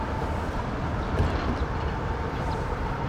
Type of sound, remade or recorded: remade